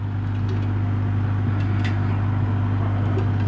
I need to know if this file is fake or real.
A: real